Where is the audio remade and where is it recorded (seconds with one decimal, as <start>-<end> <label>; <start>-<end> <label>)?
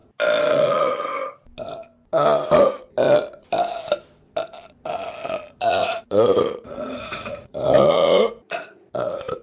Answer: 0.0-0.5 recorded; 0.5-1.1 remade; 1.1-5.6 recorded; 5.6-9.4 remade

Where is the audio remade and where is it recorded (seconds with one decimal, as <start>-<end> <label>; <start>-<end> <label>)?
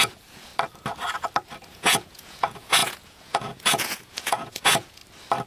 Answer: 0.0-0.5 remade; 0.5-1.7 recorded; 1.7-5.0 remade; 5.0-5.5 recorded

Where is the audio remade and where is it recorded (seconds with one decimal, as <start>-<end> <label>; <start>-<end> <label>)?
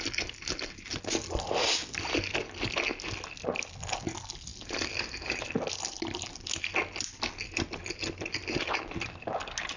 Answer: 0.0-9.8 recorded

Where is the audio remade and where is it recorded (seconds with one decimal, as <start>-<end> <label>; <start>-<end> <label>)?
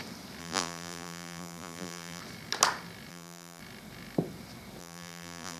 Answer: 0.0-0.4 recorded; 0.4-2.2 remade; 2.2-3.1 recorded; 3.1-3.6 remade; 3.6-4.8 recorded; 4.8-5.6 remade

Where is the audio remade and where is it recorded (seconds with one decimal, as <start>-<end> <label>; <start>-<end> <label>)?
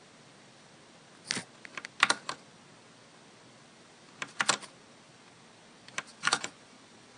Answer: 0.0-6.1 recorded; 6.1-7.2 remade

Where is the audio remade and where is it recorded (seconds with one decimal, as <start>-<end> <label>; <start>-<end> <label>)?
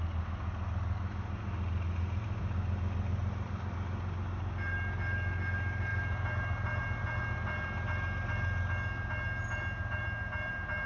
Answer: 0.0-10.9 recorded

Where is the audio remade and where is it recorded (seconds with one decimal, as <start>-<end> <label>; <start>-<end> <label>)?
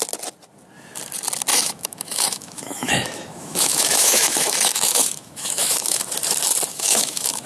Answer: 0.0-1.5 recorded; 1.5-6.0 remade; 6.0-6.7 recorded; 6.7-7.5 remade